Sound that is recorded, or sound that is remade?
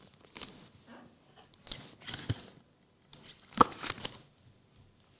recorded